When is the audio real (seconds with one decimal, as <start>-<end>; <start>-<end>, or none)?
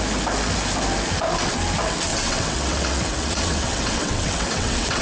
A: 0.0-2.1